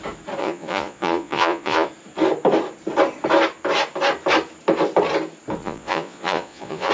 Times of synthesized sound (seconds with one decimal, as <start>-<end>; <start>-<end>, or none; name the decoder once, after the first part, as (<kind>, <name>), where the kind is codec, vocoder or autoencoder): 0.4-1.9 (vocoder, Vocos); 5.6-6.9